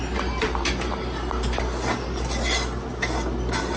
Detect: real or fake real